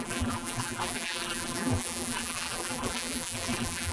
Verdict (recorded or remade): remade